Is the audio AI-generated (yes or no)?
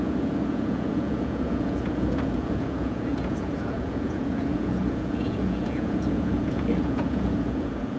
yes